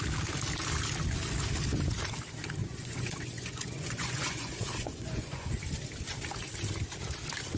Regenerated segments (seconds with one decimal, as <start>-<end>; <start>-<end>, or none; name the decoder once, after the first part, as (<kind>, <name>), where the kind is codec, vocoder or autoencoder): 2.6-5.5 (vocoder, Vocos)